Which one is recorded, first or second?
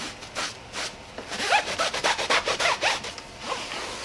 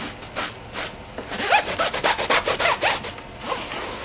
second